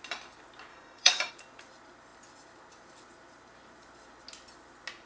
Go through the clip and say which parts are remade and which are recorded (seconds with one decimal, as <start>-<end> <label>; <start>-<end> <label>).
0.0-0.7 recorded; 0.7-1.3 remade; 1.3-5.1 recorded